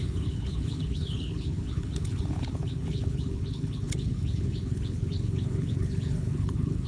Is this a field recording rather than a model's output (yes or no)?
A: no